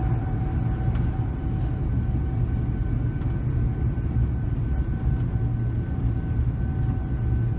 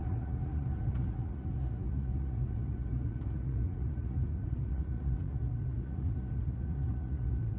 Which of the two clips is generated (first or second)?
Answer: second